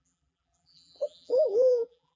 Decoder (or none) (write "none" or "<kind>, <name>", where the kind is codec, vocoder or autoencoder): vocoder, BigVGAN v2